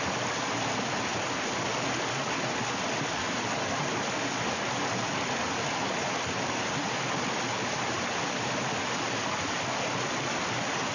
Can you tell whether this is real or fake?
real